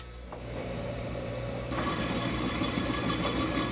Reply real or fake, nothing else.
fake